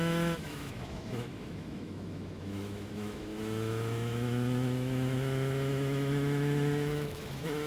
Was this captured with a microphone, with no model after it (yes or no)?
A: no